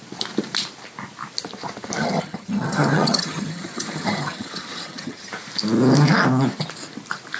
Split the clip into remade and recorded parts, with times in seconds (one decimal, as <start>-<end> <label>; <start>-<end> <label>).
0.0-2.0 recorded; 2.0-5.3 remade; 5.3-7.4 recorded

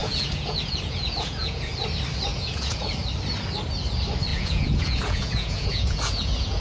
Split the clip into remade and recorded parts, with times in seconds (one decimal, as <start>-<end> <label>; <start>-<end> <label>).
0.0-1.7 remade; 1.7-2.3 recorded; 2.3-2.9 remade; 2.9-4.3 recorded; 4.3-6.6 remade